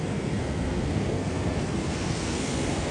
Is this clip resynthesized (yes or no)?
yes